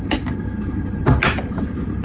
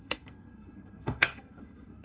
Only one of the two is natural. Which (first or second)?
first